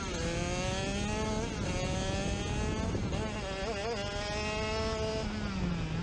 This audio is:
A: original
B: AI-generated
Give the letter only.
A